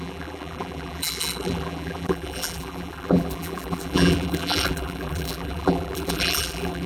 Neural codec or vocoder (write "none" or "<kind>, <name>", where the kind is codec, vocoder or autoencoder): vocoder, BigVGAN v2